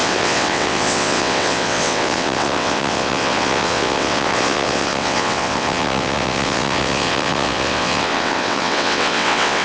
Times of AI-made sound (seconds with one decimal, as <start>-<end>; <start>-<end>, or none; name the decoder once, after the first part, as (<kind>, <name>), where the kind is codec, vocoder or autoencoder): 0.0-9.6 (vocoder, WaveNeXt)